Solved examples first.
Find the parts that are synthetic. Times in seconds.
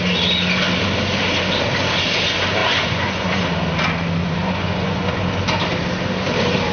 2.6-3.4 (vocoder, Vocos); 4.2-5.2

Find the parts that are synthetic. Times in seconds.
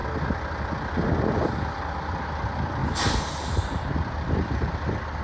2.8-5.2 (vocoder, BigVGAN v2)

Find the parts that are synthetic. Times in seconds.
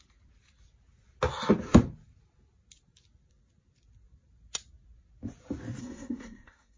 5.8-6.8 (codec, SNAC)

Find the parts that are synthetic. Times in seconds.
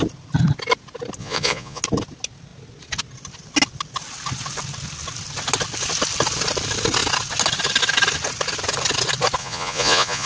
1.2-1.8 (vocoder, Vocos); 9.4-10.3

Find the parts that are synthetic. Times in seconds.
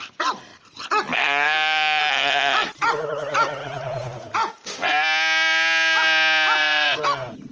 3.6-4.5 (vocoder, Vocos); 6.6-7.5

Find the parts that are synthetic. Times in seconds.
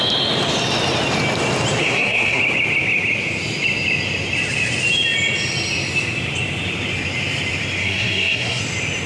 1.8-2.4 (codec, SNAC); 7.8-8.6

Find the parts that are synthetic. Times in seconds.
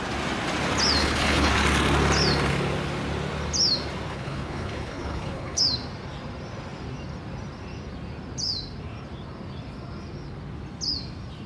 1.0-1.5 (codec, HILCodec); 4.1-5.6